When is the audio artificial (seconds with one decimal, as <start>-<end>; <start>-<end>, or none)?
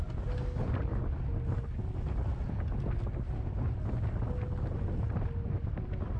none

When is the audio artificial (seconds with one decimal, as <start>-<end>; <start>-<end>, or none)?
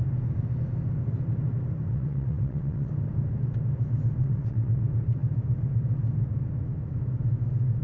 1.9-2.9; 4.2-4.8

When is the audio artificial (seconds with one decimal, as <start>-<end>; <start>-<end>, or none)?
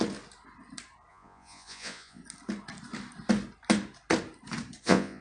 1.1-2.2; 4.8-5.2